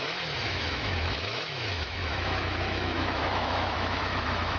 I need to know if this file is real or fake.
fake